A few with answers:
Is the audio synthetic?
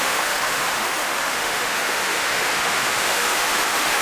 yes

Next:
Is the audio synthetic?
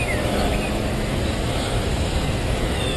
yes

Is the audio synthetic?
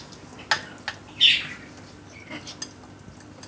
no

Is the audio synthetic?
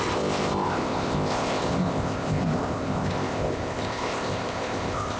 yes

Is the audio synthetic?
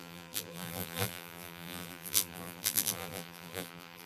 yes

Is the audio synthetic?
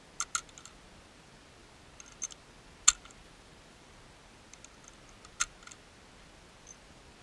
no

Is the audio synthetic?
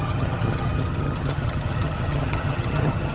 yes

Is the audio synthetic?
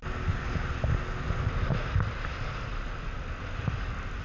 no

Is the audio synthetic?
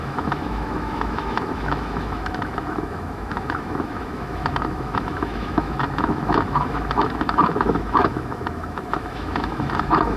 yes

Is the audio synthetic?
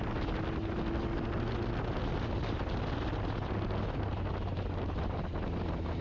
no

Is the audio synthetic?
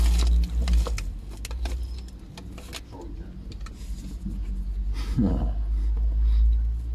no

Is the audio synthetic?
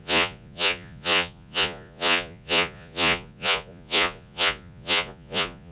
yes